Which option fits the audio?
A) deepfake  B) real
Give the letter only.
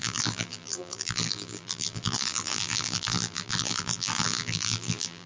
A